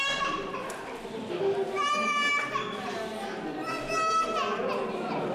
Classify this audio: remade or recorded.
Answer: recorded